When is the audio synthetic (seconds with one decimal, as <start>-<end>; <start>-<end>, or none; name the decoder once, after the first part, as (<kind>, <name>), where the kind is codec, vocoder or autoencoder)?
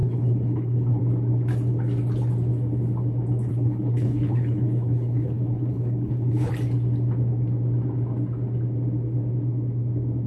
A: 0.0-1.0 (codec, HILCodec); 3.5-6.5